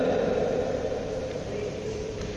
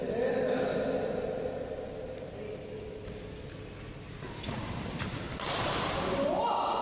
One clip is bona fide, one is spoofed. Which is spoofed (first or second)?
first